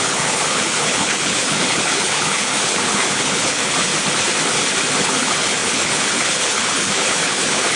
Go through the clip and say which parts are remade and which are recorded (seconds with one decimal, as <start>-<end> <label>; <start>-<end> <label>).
0.0-3.9 remade; 3.9-5.0 recorded; 5.0-7.8 remade